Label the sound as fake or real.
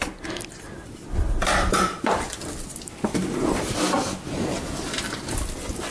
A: real